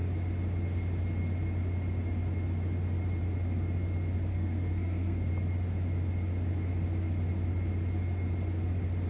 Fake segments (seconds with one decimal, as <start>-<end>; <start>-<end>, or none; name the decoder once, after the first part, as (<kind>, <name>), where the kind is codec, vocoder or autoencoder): 4.3-5.3 (codec, SNAC)